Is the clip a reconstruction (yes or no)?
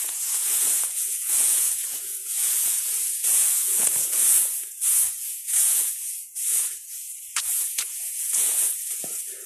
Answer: yes